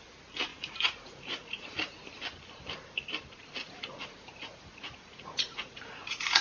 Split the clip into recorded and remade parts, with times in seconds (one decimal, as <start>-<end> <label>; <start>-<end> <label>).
0.0-0.5 recorded; 0.5-2.0 remade; 2.0-3.6 recorded; 3.6-6.4 remade